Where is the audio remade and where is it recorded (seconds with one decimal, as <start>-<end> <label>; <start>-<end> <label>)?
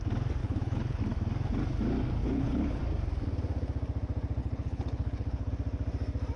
0.0-0.4 recorded; 0.4-1.0 remade; 1.0-2.2 recorded; 2.2-2.8 remade; 2.8-4.4 recorded; 4.4-5.5 remade; 5.5-6.4 recorded